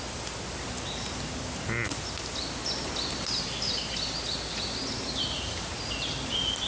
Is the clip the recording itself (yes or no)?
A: yes